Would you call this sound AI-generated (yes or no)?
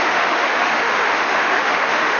yes